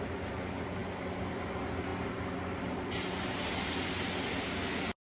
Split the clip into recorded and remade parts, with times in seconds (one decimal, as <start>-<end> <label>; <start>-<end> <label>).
0.0-5.2 recorded